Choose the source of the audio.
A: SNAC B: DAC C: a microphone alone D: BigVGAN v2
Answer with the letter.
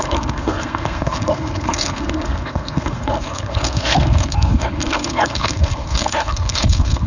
A